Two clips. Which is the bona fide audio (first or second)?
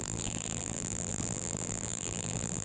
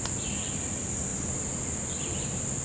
second